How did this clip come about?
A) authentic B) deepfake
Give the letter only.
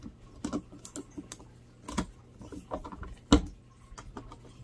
A